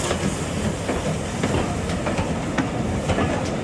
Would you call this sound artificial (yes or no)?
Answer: no